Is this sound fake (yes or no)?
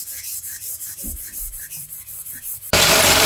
yes